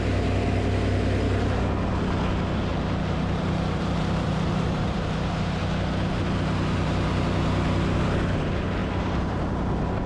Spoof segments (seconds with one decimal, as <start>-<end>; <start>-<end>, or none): 2.7-5.6; 8.8-9.5